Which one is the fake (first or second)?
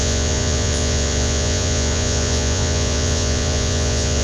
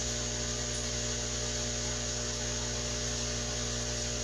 first